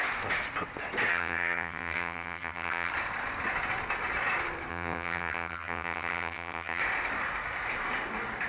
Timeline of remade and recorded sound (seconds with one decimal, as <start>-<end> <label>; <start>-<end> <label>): 0.0-1.1 recorded; 1.1-2.9 remade; 2.9-4.7 recorded; 4.7-6.8 remade; 6.8-8.5 recorded